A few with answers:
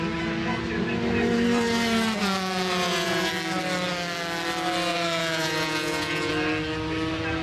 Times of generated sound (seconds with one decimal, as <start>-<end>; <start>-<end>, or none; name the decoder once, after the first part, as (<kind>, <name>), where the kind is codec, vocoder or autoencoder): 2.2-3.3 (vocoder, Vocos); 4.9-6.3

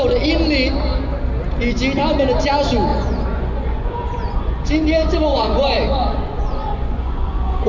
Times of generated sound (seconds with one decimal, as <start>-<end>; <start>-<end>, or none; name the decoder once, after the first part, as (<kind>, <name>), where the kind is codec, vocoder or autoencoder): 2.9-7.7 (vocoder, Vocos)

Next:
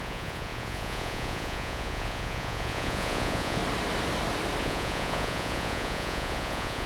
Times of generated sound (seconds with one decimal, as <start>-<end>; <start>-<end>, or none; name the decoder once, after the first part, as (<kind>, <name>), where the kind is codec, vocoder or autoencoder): 0.0-3.6 (vocoder, Vocos); 4.6-6.9